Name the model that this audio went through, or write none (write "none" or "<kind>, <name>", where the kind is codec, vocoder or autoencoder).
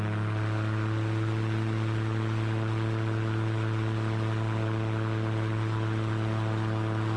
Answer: none